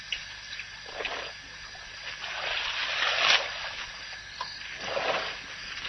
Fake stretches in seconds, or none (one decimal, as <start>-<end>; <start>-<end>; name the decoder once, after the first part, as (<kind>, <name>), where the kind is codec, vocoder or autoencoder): none